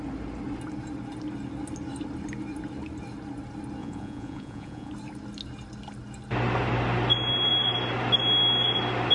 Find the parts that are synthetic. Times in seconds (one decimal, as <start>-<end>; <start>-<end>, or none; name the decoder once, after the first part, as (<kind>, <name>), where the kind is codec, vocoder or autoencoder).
3.8-4.9 (vocoder, Vocos)